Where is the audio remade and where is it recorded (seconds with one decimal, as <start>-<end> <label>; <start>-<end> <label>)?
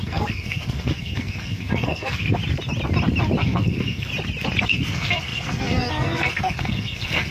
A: 0.0-2.4 remade; 2.4-3.4 recorded; 3.4-4.1 remade; 4.1-4.6 recorded; 4.6-7.3 remade